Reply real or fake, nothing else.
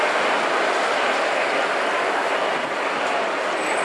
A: real